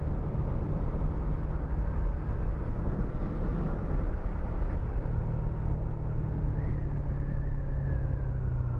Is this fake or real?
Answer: real